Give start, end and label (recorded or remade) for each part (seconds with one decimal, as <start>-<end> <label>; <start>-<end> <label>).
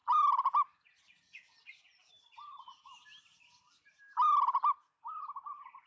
0.0-3.2 remade; 3.2-5.9 recorded